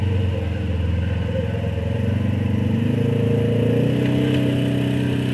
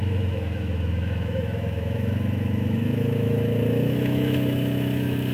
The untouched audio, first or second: first